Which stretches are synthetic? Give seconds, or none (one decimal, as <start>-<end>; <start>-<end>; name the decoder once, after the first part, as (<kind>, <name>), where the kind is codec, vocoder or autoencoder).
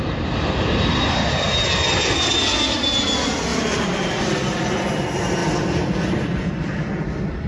3.5-4.8 (vocoder, BigVGAN v2); 5.4-6.9